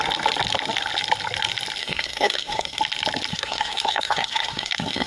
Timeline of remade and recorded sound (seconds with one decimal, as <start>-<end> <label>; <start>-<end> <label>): 0.0-1.8 recorded; 1.8-2.8 remade; 2.8-3.3 recorded; 3.3-5.1 remade